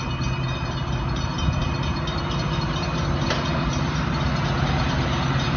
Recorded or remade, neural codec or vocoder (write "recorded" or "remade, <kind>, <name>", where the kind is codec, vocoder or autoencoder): remade, vocoder, BigVGAN v2